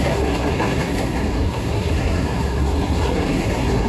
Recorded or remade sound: remade